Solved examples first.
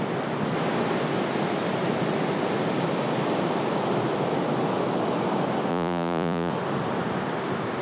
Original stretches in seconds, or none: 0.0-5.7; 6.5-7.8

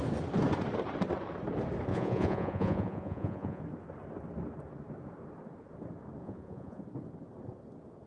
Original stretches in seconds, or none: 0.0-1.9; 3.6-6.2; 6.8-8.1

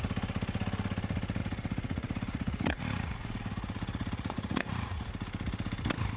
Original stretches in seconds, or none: 0.0-1.4; 5.1-6.2

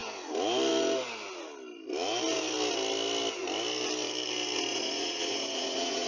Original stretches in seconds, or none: 0.0-4.7

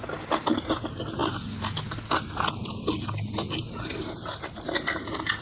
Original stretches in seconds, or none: 0.0-5.4